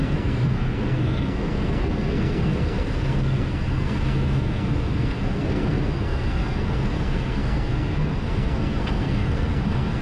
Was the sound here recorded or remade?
remade